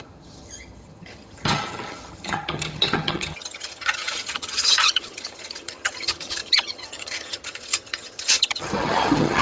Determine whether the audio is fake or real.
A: fake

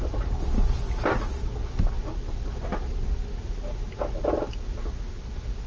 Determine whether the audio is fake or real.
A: real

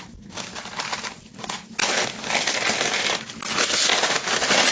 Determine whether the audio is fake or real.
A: real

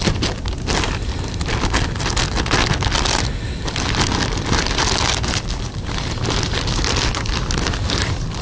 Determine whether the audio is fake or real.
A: real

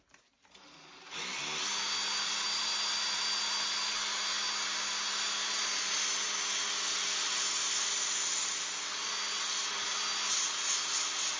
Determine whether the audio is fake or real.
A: real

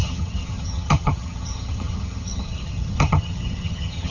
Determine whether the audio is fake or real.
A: fake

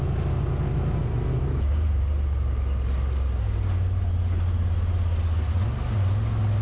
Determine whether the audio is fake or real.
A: real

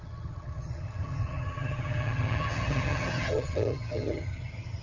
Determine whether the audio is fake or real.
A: fake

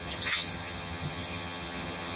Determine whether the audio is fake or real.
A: fake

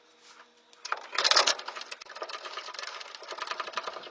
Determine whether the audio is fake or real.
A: real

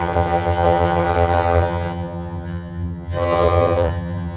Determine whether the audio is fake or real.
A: fake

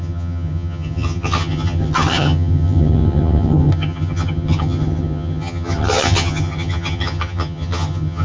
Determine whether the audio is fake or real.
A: fake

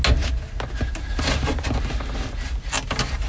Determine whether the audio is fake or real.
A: real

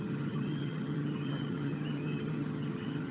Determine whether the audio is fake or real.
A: fake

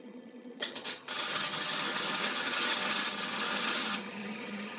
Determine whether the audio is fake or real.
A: fake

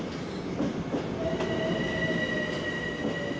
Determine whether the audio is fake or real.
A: real